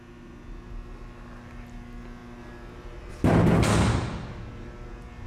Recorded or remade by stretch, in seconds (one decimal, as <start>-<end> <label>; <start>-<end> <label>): 0.0-5.3 recorded